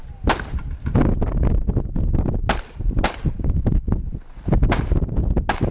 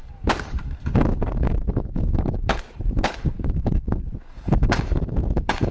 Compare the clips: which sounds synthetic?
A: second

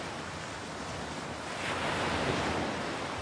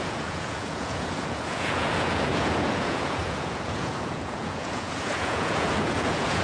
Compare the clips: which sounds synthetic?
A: second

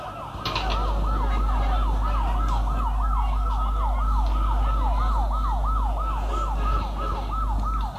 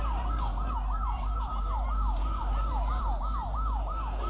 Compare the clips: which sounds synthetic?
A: second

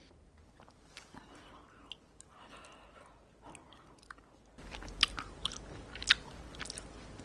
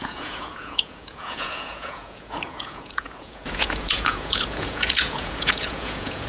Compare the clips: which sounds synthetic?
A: second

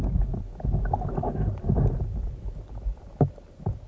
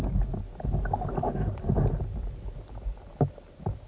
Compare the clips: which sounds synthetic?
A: first